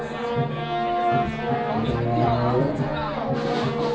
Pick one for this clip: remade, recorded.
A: recorded